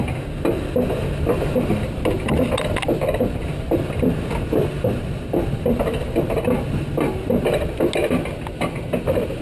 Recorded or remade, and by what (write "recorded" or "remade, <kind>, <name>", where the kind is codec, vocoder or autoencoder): recorded